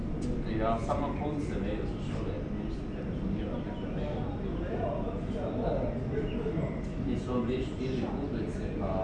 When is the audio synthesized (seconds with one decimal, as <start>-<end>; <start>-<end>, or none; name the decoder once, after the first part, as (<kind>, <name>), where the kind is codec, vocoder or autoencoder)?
none